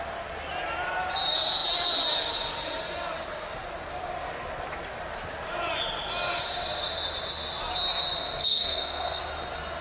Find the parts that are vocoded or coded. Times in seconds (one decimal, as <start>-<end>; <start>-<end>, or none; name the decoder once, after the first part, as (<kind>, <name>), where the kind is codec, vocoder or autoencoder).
8.4-9.2 (codec, SNAC)